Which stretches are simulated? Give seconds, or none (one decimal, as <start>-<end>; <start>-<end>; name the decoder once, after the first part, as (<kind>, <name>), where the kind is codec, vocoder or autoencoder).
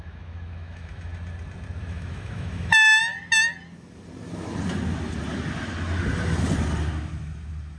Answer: 0.0-1.1 (autoencoder, DAC-VAE); 1.8-3.0